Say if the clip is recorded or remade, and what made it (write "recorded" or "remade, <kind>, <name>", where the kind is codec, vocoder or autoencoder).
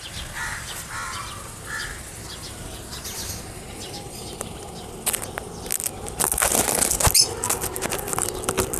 recorded